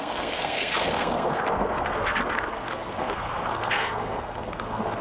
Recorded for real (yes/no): no